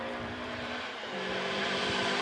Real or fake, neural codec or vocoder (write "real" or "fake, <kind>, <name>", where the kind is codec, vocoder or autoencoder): fake, vocoder, BigVGAN v2